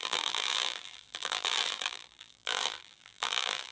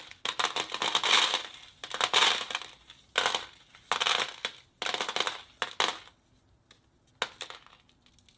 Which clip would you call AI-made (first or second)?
first